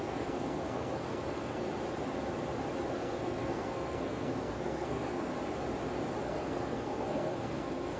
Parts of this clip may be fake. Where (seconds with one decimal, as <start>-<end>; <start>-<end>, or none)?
0.0-1.7; 2.9-5.3; 6.2-8.0